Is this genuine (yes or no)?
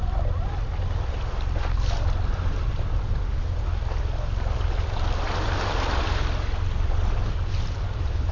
yes